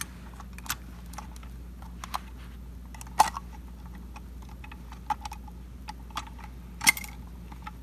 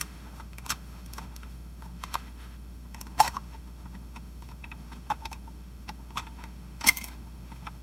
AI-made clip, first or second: second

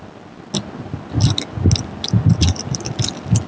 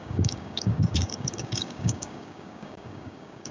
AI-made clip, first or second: second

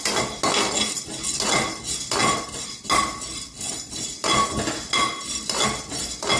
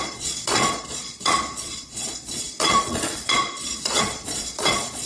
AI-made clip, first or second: second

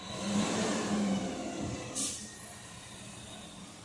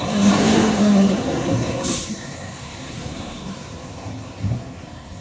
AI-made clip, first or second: second